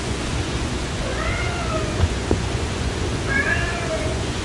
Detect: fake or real fake